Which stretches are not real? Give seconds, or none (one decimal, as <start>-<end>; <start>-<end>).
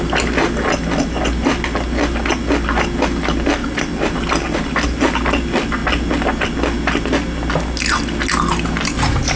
none